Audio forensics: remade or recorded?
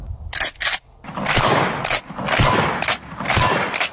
recorded